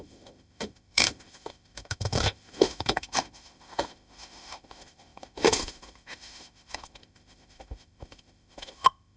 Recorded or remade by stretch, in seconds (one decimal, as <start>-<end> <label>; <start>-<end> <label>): 0.0-9.2 remade